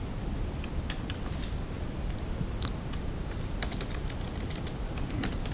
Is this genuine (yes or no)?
yes